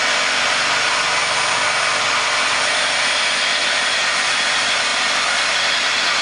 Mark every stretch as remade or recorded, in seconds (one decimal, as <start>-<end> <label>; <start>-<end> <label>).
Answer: 0.0-6.2 recorded

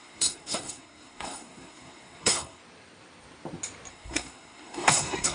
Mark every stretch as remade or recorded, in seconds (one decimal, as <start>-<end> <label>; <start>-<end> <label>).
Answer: 0.0-2.6 remade; 2.6-3.9 recorded; 3.9-5.3 remade